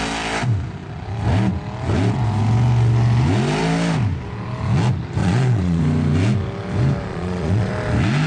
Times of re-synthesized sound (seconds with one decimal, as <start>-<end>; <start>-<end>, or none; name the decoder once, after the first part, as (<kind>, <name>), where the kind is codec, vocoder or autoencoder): 5.2-5.8 (vocoder, Vocos); 7.1-7.7